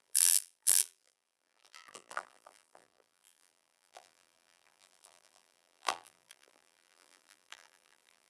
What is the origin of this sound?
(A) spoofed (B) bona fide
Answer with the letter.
A